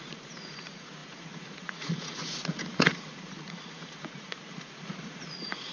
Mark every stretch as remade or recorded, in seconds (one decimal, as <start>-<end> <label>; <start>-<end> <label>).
0.0-5.7 remade